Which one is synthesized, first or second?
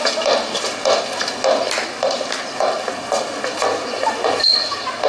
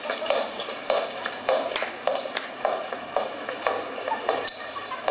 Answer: second